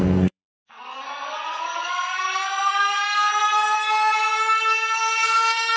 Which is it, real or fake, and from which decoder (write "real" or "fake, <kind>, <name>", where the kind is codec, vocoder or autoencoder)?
fake, codec, SNAC